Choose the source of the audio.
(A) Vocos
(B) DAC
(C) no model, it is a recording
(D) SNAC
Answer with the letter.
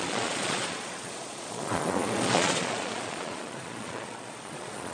A